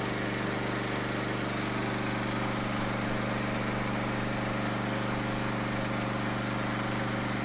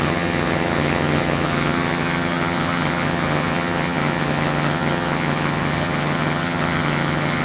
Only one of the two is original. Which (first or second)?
first